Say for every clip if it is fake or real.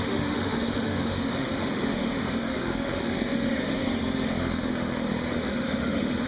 fake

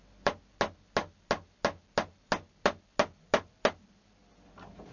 real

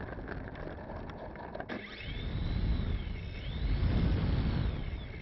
real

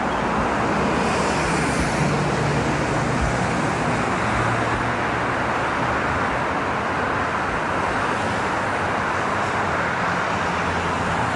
real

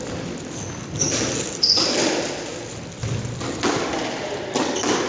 real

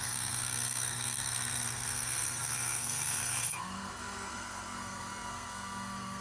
fake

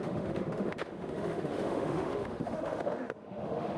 fake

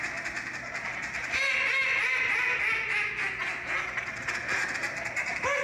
real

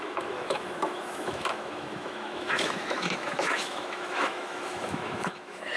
fake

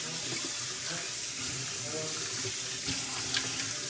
real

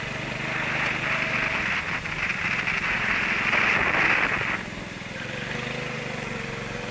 real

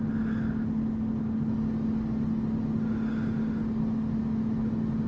real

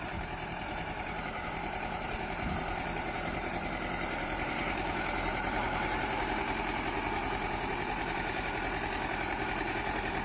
fake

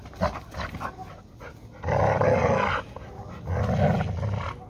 real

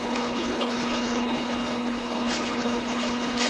fake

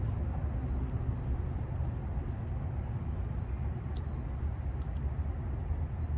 real